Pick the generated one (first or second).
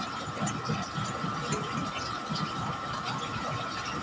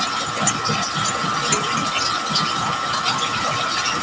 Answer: first